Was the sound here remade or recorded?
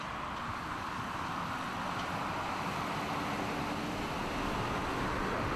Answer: recorded